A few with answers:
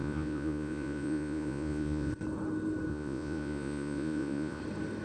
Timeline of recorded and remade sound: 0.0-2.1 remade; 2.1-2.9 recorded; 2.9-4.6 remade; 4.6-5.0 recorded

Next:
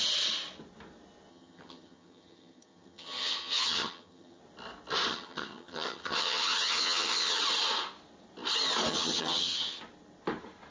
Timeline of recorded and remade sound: 0.0-1.3 recorded; 1.3-4.4 remade; 4.4-5.1 recorded; 5.1-7.4 remade; 7.4-8.9 recorded; 8.9-9.8 remade; 9.8-10.7 recorded

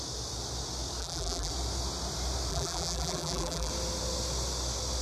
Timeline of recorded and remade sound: 0.0-1.0 recorded; 1.0-1.5 remade; 1.5-2.5 recorded; 2.5-3.7 remade; 3.7-5.0 recorded

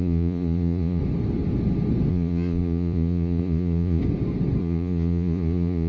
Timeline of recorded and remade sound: 0.0-1.0 remade; 1.0-2.1 recorded; 2.1-4.0 remade; 4.0-4.6 recorded; 4.6-5.9 remade

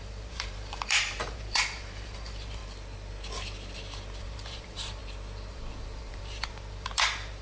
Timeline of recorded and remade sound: 0.0-2.6 remade; 2.6-4.2 recorded; 4.2-5.0 remade; 5.0-5.5 recorded; 5.5-7.4 remade